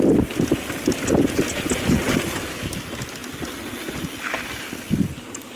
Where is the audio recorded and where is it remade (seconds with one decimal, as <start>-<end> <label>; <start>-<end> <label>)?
0.0-5.6 recorded